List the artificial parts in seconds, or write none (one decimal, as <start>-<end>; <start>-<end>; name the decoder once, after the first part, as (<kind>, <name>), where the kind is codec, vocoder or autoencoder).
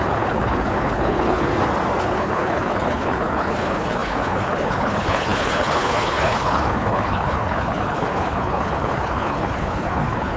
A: 0.0-1.5 (codec, HILCodec); 2.0-10.4